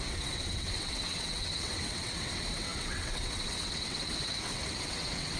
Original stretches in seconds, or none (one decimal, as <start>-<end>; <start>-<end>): none